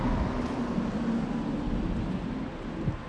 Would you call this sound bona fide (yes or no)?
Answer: yes